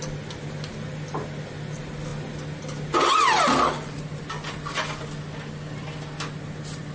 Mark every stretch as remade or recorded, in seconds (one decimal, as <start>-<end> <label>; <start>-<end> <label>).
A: 0.0-6.9 recorded